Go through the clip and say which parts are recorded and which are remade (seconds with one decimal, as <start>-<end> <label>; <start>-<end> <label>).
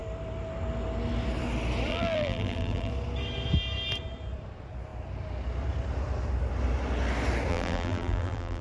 0.0-1.9 recorded; 1.9-2.9 remade; 2.9-7.5 recorded; 7.5-8.6 remade